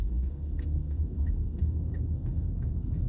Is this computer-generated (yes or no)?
yes